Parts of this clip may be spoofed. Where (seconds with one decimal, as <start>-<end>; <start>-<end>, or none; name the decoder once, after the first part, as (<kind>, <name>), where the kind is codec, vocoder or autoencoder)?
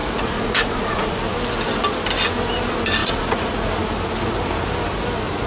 0.0-1.1 (vocoder, Vocos); 3.0-3.7